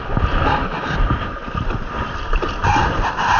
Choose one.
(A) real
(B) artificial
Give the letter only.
A